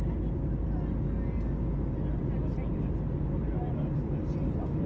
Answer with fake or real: real